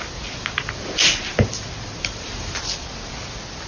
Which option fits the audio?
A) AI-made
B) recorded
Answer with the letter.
B